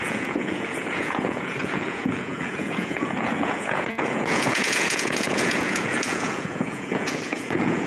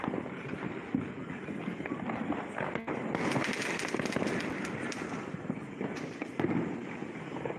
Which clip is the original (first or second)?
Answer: second